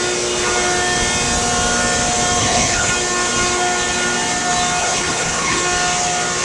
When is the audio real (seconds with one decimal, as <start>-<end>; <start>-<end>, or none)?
0.0-2.4; 2.9-4.8; 5.6-6.4